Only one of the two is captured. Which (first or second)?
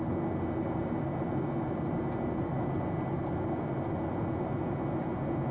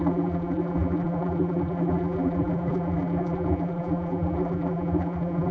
first